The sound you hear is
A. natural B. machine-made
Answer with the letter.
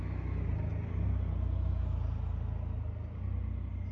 A